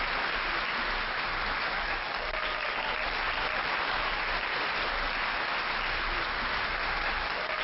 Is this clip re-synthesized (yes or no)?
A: no